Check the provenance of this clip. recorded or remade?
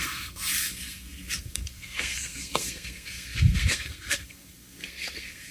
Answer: remade